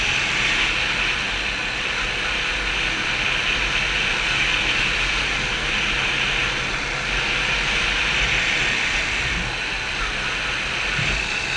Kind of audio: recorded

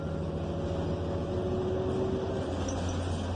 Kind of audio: recorded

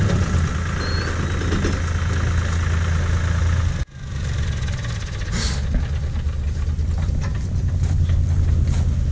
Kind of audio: recorded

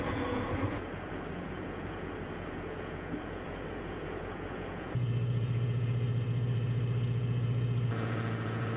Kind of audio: remade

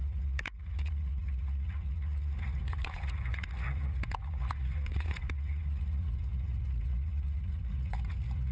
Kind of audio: remade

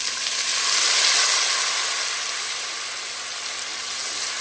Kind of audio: recorded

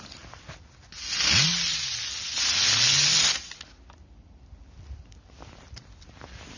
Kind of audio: recorded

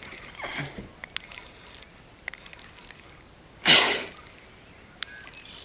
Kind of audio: recorded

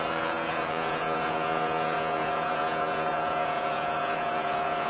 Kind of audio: remade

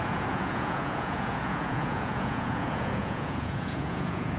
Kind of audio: remade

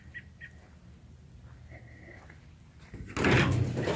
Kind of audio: recorded